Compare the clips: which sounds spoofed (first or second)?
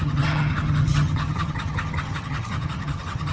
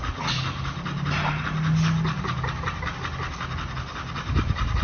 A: first